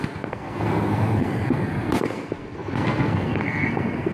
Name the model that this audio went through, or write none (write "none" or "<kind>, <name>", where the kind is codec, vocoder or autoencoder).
codec, SNAC